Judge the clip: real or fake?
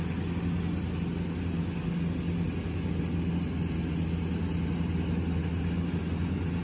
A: real